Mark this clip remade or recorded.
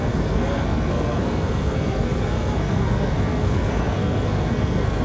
remade